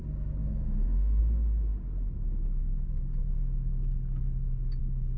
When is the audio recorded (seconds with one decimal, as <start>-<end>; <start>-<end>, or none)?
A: 0.0-0.4; 1.2-5.2